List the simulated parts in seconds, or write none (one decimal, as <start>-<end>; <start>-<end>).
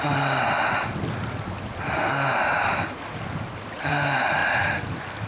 none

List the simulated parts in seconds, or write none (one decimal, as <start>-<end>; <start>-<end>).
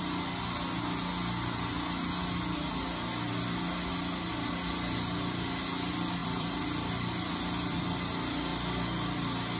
6.2-7.8